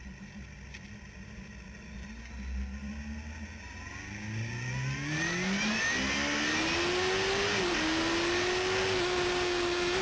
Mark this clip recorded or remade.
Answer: recorded